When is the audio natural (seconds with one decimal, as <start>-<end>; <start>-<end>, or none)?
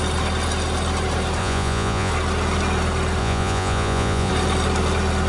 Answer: 0.0-1.4; 2.1-3.2; 4.3-5.3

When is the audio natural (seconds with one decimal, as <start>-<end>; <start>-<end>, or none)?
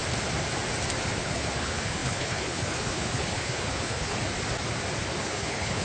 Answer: 0.0-1.1; 4.1-5.2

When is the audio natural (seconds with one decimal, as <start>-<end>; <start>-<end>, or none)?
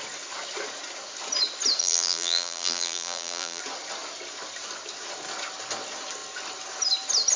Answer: 0.0-1.8; 3.6-7.4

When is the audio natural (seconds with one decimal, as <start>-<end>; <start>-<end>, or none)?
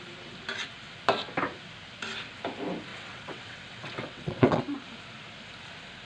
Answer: 0.0-2.9; 4.6-6.1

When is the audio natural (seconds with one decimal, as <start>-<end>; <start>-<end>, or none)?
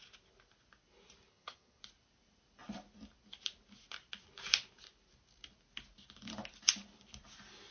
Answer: 0.0-1.3; 1.8-7.7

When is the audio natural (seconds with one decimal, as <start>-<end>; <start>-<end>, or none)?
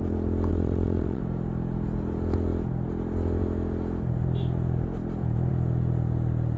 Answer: 0.0-0.5; 1.2-6.6